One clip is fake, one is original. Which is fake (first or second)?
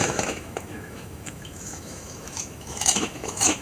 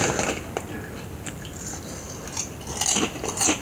first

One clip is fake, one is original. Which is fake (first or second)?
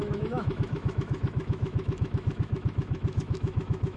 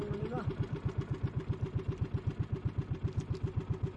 first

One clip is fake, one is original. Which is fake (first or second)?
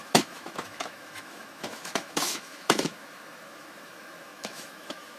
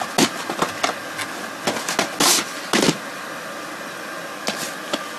first